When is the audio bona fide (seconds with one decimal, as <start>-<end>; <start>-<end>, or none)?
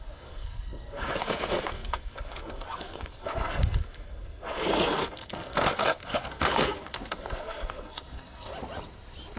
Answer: 8.5-9.4